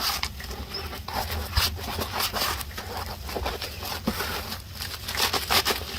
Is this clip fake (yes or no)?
no